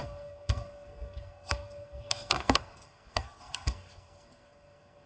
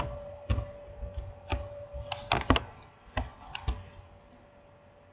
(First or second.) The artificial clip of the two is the first